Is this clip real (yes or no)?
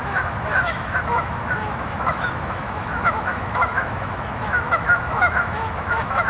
no